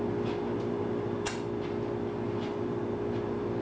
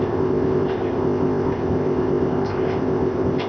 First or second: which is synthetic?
second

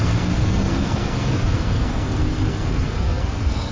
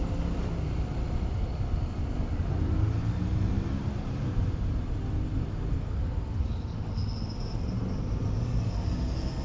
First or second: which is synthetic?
first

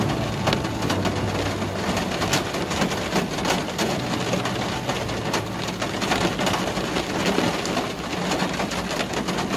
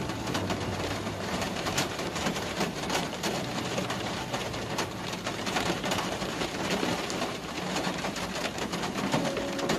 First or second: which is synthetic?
second